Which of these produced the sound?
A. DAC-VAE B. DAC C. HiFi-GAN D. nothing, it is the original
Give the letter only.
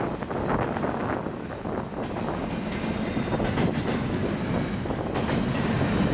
D